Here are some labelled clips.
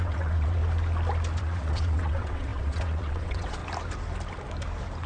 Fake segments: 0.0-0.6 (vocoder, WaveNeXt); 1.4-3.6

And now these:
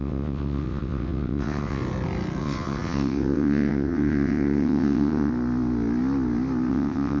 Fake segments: 0.0-1.8 (vocoder, WaveNeXt); 2.4-5.3; 6.7-7.2

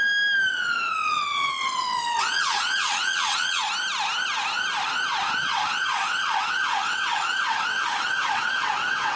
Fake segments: 0.5-3.6 (vocoder, WaveNeXt); 5.4-9.2